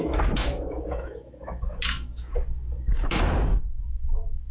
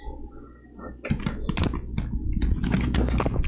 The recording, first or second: second